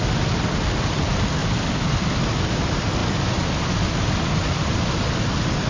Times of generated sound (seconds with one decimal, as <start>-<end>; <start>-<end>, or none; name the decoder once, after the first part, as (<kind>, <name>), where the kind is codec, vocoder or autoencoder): 1.4-2.3 (vocoder, BigVGAN v2); 3.0-5.0